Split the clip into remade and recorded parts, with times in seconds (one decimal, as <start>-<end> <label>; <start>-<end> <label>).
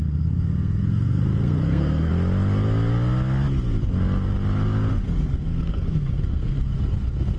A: 0.0-2.1 remade; 2.1-4.9 recorded; 4.9-7.4 remade